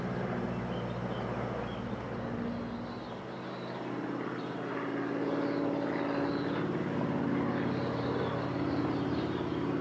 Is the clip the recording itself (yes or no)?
yes